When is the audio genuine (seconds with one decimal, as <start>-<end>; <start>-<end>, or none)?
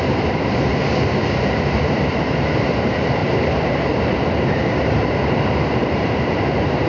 0.7-1.4